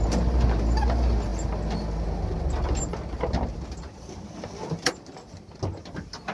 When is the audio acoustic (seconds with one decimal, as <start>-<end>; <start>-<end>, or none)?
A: 0.0-6.3